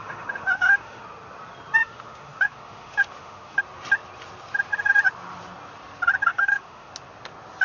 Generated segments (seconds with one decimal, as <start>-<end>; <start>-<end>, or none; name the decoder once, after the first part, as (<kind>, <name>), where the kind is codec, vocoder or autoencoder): 0.0-1.0 (autoencoder, DAC-VAE); 1.8-3.6; 6.3-6.9